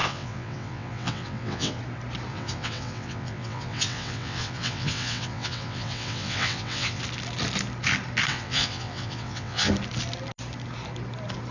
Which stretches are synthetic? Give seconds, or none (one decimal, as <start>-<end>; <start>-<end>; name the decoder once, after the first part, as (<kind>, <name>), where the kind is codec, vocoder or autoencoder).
0.0-1.8 (vocoder, WaveNeXt); 2.3-7.0; 8.3-9.7